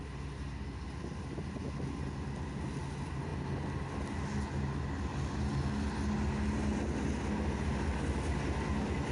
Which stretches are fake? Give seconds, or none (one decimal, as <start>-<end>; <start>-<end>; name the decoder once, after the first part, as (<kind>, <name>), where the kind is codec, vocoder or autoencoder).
none

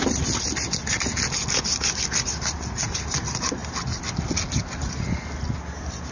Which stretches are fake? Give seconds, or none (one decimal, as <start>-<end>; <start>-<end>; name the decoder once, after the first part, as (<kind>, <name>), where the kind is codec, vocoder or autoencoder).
none

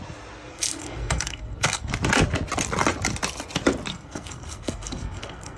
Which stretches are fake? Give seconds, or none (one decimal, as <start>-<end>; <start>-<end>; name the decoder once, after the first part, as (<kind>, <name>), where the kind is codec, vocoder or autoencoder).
0.5-1.9 (codec, SNAC); 3.9-5.6

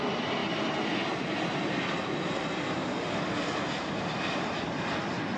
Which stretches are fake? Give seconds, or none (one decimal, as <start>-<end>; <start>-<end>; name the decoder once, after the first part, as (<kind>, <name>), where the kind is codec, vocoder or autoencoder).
none

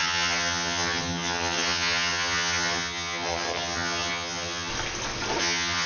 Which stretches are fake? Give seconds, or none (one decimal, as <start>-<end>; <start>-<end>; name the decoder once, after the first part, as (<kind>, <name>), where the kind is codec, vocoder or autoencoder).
0.0-4.7 (vocoder, HiFi-GAN); 5.4-5.9